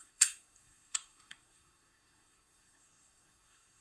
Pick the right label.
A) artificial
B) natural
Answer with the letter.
A